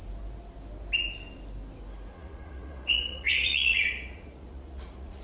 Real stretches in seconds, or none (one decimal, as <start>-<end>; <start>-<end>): 0.0-2.1